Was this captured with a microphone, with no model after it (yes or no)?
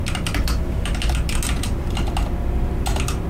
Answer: yes